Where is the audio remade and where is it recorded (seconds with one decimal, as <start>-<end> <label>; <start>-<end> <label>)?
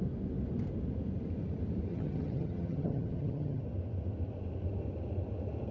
0.0-1.9 recorded; 1.9-3.6 remade; 3.6-5.7 recorded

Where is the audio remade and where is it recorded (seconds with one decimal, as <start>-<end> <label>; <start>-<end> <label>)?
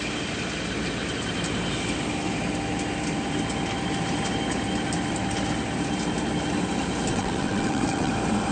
0.0-7.1 recorded; 7.1-8.1 remade; 8.1-8.5 recorded